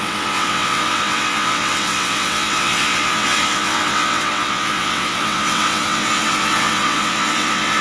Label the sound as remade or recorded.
remade